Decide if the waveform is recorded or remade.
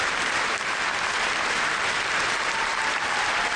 recorded